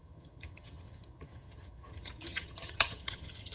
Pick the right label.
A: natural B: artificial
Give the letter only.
B